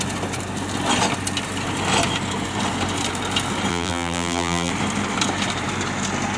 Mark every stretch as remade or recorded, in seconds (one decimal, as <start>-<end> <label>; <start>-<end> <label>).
0.0-3.7 recorded; 3.7-4.7 remade; 4.7-6.4 recorded

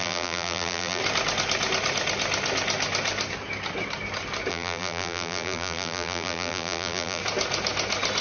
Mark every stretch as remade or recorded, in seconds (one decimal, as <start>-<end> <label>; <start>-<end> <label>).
0.0-1.0 remade; 1.0-4.5 recorded; 4.5-7.2 remade; 7.2-8.2 recorded